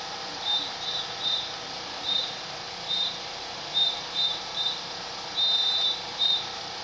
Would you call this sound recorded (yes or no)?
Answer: no